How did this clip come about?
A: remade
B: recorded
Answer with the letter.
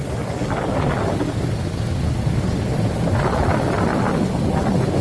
B